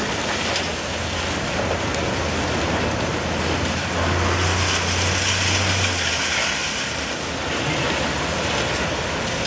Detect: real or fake real